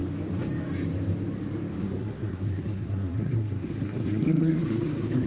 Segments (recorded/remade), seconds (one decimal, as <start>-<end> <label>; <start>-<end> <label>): 0.0-1.8 recorded; 1.8-5.3 remade